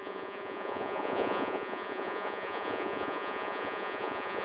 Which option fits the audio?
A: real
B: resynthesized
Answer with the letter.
B